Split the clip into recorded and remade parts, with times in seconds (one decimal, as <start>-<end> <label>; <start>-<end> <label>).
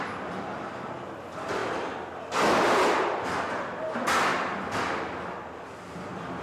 0.0-6.4 recorded